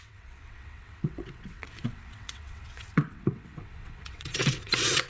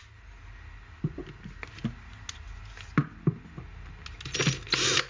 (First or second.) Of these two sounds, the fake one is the first